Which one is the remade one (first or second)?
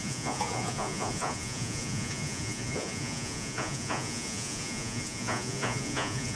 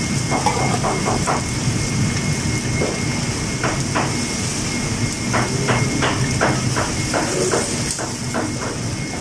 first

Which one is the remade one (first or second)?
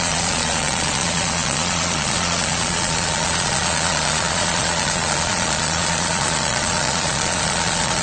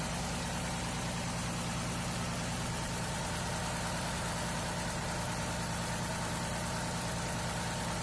first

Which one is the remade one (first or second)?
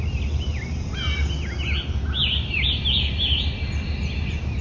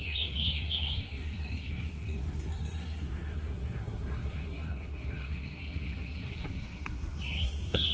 second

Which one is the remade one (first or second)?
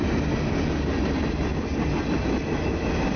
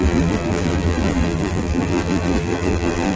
second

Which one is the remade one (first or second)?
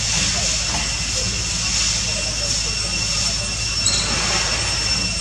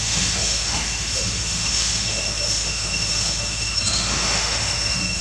second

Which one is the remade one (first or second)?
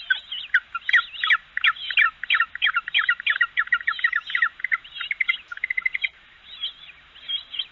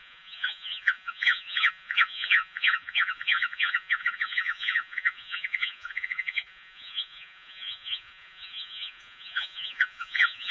second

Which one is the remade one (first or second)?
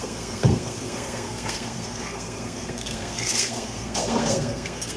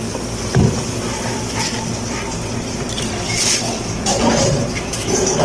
first